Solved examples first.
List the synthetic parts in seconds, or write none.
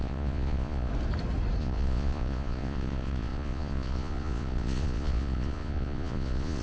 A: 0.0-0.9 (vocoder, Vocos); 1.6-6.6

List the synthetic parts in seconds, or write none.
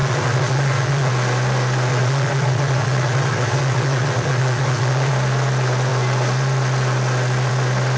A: 0.0-1.1 (vocoder, Vocos); 1.9-5.1